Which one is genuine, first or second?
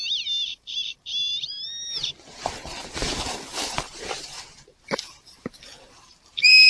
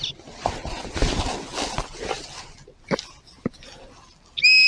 second